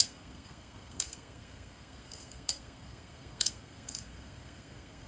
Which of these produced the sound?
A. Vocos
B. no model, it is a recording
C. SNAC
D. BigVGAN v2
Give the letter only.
C